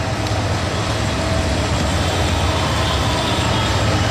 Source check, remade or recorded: recorded